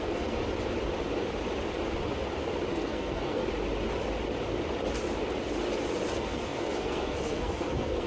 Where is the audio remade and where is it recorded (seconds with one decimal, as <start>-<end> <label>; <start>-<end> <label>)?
0.0-0.4 remade; 0.4-2.7 recorded; 2.7-3.4 remade; 3.4-6.1 recorded; 6.1-8.1 remade